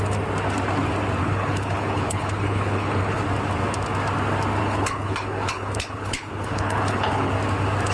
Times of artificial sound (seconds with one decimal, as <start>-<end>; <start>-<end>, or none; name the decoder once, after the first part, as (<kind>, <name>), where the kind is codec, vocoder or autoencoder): 1.2-3.2 (codec, HILCodec); 4.6-7.3

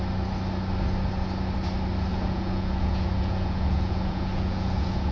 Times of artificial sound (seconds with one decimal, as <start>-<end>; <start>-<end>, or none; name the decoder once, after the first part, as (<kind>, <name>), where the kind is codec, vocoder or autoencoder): 2.1-5.1 (vocoder, Vocos)